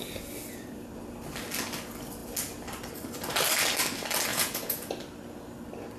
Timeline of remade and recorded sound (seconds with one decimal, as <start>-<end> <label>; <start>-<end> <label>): 0.0-4.3 recorded; 4.3-4.9 remade; 4.9-6.0 recorded